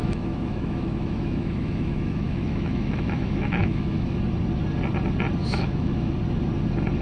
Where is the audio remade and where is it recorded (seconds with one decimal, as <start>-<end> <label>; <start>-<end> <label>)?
0.0-4.2 remade; 4.2-5.4 recorded; 5.4-6.1 remade; 6.1-7.0 recorded